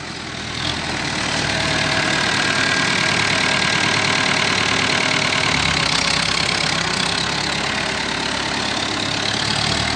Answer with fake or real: real